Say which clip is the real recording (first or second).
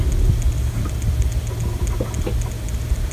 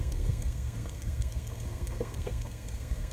first